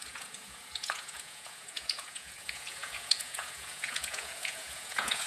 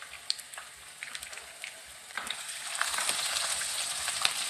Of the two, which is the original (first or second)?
second